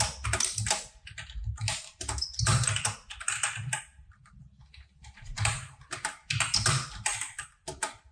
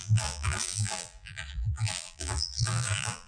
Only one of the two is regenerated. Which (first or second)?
second